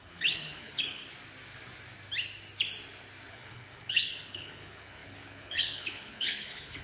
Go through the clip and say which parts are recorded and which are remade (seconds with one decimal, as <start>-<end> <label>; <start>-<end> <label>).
0.0-1.0 remade; 1.0-3.3 recorded; 3.3-6.8 remade

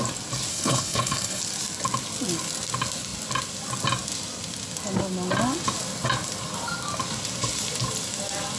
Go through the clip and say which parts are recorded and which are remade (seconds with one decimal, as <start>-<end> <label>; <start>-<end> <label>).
0.0-0.5 recorded; 0.5-1.4 remade; 1.4-8.6 recorded

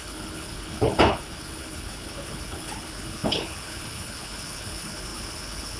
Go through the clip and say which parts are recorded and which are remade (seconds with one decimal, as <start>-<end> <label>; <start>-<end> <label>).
0.0-5.8 remade

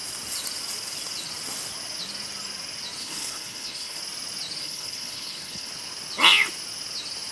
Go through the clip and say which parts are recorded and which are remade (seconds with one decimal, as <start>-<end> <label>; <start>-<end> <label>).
0.0-3.0 recorded; 3.0-4.0 remade; 4.0-4.6 recorded; 4.6-5.7 remade; 5.7-7.3 recorded

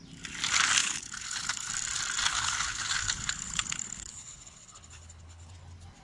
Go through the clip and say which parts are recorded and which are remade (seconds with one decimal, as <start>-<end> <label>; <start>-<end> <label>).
0.0-0.8 recorded; 0.8-1.7 remade; 1.7-2.3 recorded; 2.3-5.5 remade; 5.5-6.0 recorded

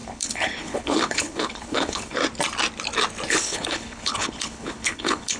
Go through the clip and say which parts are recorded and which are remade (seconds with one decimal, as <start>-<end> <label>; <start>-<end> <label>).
0.0-2.2 remade; 2.2-3.3 recorded; 3.3-5.4 remade

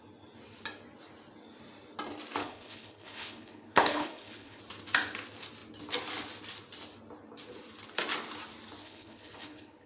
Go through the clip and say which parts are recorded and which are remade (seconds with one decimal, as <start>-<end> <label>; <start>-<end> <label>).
0.0-2.4 recorded; 2.4-4.6 remade; 4.6-8.8 recorded; 8.8-9.9 remade